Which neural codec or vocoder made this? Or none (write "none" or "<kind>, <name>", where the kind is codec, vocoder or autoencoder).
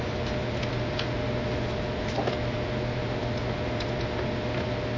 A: none